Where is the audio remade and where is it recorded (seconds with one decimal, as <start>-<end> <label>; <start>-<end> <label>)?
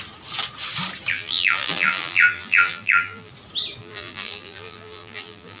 0.0-1.1 recorded; 1.1-3.3 remade; 3.3-3.8 recorded; 3.8-5.6 remade